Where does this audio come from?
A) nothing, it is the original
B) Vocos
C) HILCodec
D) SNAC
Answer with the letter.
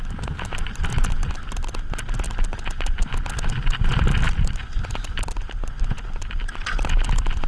A